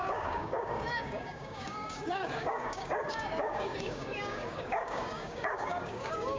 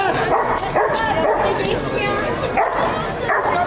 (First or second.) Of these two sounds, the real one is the second